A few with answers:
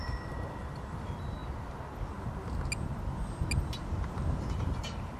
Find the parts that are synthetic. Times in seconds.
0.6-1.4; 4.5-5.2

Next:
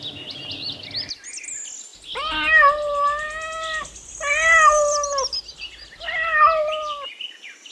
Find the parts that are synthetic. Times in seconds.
none

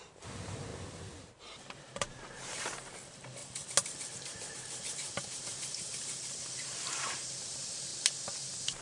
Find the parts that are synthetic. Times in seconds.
0.0-3.4; 4.1-7.9

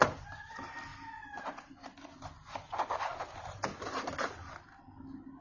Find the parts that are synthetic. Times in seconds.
none

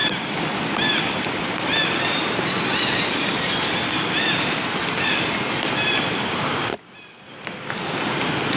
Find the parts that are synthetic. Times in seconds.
0.0-5.1

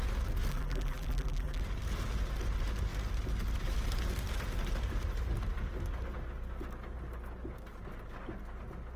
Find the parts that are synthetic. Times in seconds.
0.5-1.6